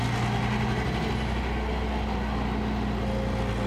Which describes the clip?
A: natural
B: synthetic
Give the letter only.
A